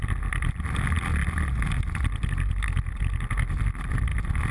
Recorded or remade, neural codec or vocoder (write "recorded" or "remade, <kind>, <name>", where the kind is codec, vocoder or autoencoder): recorded